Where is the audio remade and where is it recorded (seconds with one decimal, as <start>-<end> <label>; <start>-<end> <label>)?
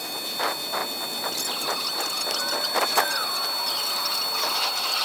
0.0-5.0 recorded